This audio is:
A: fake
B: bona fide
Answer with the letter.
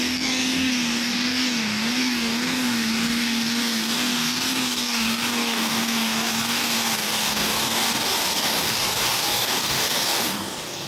A